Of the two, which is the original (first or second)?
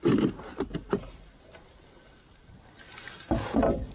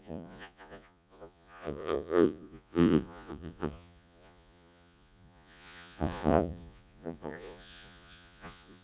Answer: first